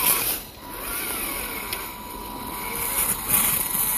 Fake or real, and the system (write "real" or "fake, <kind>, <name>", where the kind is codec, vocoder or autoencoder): real